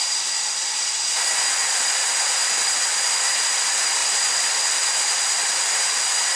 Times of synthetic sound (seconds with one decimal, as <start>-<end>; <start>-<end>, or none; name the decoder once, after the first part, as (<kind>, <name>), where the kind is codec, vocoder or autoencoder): none